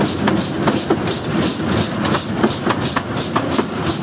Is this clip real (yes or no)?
yes